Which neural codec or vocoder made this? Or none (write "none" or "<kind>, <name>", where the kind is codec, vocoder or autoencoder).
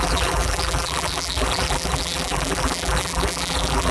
vocoder, BigVGAN v2